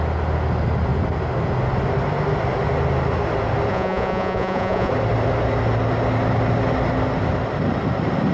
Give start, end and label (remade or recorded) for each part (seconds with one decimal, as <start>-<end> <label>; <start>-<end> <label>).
0.0-3.7 recorded; 3.7-4.9 remade; 4.9-8.3 recorded